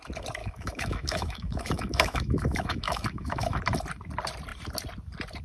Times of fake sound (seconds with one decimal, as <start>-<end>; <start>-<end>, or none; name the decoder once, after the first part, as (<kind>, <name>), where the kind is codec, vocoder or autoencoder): 0.4-3.6 (autoencoder, DAC-VAE)